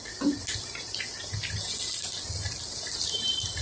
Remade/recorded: recorded